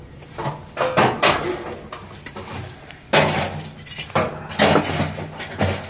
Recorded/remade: recorded